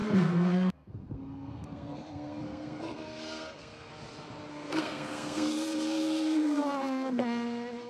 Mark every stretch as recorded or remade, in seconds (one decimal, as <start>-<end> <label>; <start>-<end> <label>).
0.0-3.9 remade; 3.9-4.5 recorded; 4.5-7.9 remade